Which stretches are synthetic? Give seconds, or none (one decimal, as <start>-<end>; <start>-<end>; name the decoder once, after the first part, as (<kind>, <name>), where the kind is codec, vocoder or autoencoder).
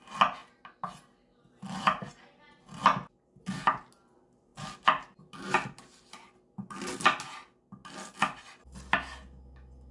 none